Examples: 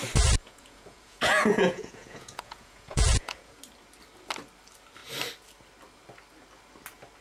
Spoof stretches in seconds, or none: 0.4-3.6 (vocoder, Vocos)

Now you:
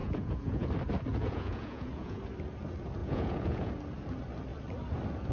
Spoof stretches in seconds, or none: 0.0-0.7 (vocoder, Vocos); 1.1-2.2; 3.0-3.7

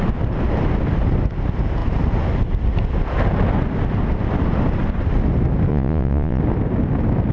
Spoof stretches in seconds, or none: 5.7-6.4 (vocoder, Vocos)

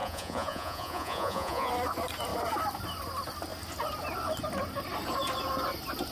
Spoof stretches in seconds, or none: 0.0-1.7 (vocoder, Vocos)

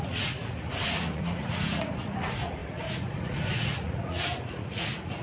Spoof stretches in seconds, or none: 0.0-5.2 (vocoder, Vocos)